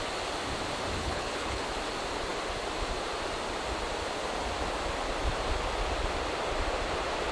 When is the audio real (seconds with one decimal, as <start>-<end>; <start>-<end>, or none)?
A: 0.0-1.0; 1.6-7.3